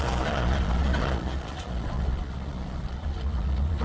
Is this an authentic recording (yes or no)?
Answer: no